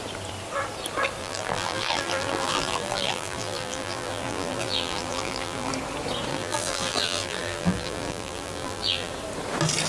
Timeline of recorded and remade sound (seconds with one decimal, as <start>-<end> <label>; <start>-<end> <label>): 0.0-1.2 recorded; 1.2-5.7 remade; 5.7-6.3 recorded; 6.3-9.1 remade; 9.1-9.9 recorded